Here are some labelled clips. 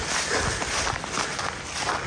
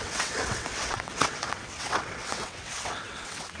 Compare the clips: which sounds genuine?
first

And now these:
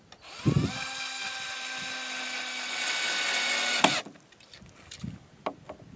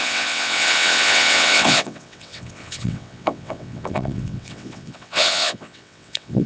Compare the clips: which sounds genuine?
first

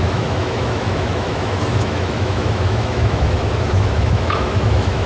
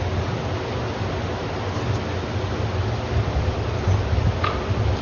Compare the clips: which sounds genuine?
second